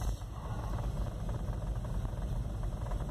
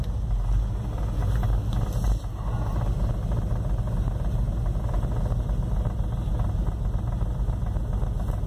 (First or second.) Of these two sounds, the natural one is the second